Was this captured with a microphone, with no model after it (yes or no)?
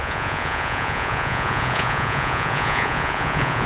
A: no